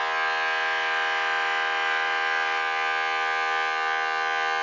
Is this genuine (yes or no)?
yes